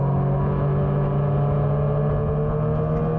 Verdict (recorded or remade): recorded